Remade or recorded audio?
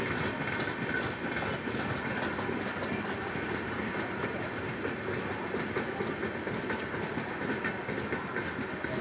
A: recorded